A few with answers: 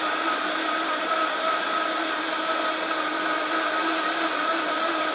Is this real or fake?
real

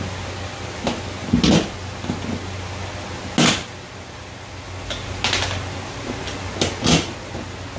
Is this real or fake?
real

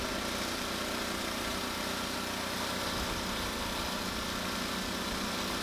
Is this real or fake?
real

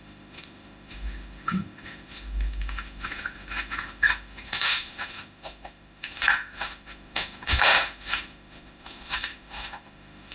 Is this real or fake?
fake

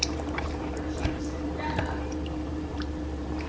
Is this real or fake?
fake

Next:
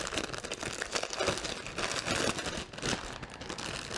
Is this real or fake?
real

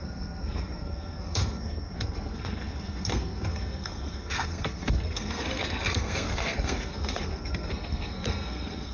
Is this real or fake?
fake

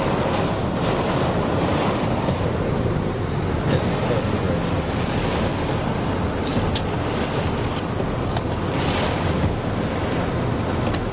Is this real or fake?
real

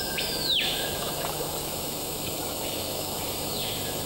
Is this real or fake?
fake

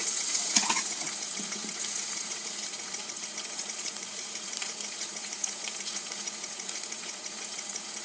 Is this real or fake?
fake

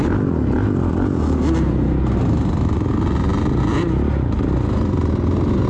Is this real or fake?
real